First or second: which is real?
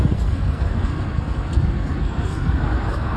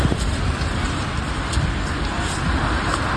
second